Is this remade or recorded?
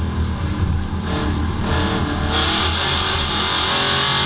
recorded